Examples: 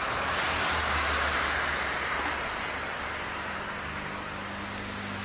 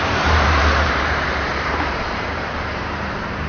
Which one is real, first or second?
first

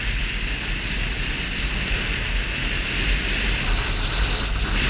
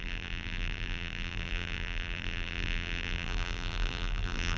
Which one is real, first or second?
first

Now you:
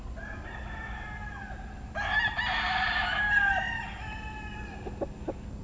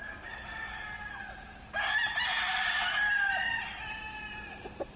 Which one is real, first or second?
first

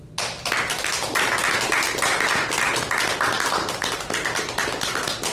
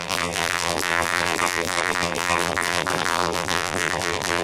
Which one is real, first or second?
first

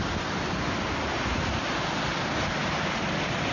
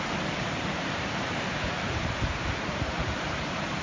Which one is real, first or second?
first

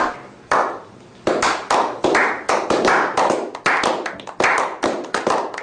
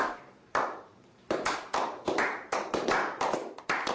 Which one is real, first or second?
first